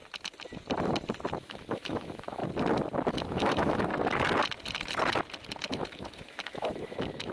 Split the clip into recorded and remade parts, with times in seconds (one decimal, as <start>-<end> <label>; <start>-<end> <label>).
0.0-1.4 recorded; 1.4-2.4 remade; 2.4-3.1 recorded; 3.1-3.9 remade; 3.9-5.7 recorded; 5.7-7.3 remade